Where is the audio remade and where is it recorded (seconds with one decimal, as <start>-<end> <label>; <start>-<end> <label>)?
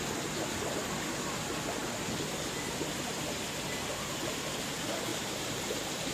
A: 0.0-5.1 recorded; 5.1-6.1 remade